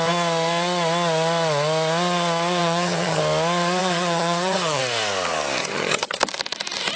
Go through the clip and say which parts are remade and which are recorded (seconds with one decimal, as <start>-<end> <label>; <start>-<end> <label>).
0.0-2.6 recorded; 2.6-3.2 remade; 3.2-3.8 recorded; 3.8-4.8 remade; 4.8-5.6 recorded; 5.6-6.2 remade; 6.2-7.0 recorded